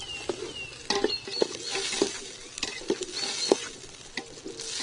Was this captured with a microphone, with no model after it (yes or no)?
yes